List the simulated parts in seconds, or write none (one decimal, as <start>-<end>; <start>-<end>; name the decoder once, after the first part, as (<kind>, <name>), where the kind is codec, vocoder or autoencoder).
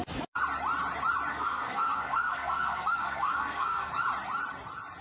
1.3-3.9 (codec, SNAC)